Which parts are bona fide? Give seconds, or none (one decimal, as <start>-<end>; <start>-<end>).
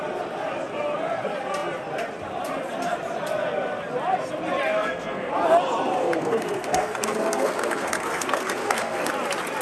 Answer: 0.0-4.7; 5.3-6.0; 9.1-9.6